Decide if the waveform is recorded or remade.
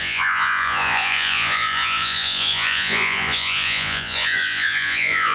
remade